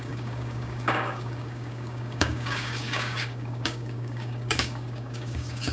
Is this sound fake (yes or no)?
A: yes